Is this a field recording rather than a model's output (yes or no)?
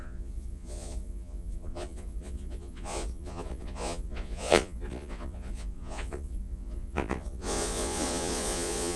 no